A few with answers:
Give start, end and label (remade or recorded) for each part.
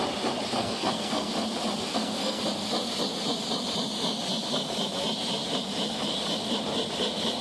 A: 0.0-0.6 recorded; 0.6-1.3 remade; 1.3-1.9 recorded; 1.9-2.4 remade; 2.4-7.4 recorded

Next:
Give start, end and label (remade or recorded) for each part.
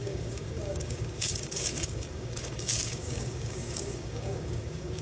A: 0.0-5.0 remade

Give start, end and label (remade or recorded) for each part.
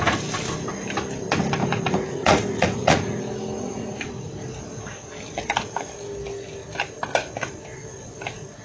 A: 0.0-1.6 recorded; 1.6-3.2 remade; 3.2-3.6 recorded; 3.6-4.3 remade; 4.3-8.6 recorded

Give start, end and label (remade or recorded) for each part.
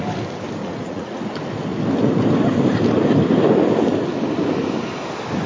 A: 0.0-0.6 recorded; 0.6-1.2 remade; 1.2-5.5 recorded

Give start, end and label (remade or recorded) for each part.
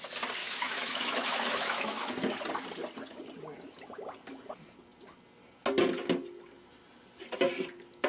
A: 0.0-0.4 recorded; 0.4-2.1 remade; 2.1-8.1 recorded